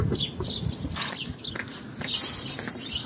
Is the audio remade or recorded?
recorded